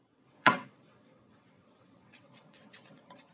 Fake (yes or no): yes